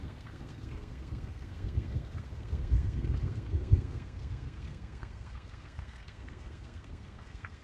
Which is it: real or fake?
fake